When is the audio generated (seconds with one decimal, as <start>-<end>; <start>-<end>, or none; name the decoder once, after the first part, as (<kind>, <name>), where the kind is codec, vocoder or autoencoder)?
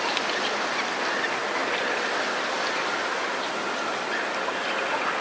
none